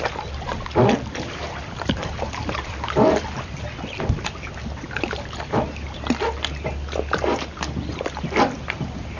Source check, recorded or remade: recorded